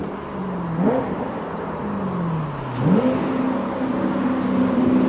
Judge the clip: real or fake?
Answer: real